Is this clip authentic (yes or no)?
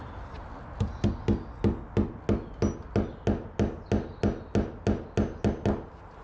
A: yes